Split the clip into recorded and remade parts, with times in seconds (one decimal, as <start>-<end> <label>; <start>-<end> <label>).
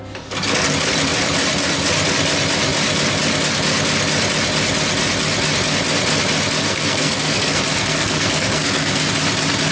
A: 0.0-6.6 recorded; 6.6-9.1 remade; 9.1-9.7 recorded